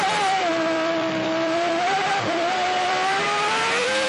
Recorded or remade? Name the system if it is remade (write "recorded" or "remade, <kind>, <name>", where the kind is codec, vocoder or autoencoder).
remade, vocoder, BigVGAN v2